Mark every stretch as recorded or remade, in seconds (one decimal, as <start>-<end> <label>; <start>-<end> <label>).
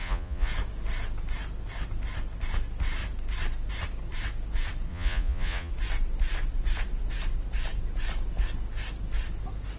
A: 0.0-0.5 remade; 0.5-4.9 recorded; 4.9-5.7 remade; 5.7-9.8 recorded